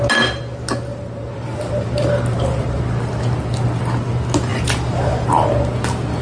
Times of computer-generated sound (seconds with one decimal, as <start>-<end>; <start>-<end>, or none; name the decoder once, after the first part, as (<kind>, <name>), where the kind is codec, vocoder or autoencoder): 0.9-2.8 (vocoder, BigVGAN v2); 4.5-5.5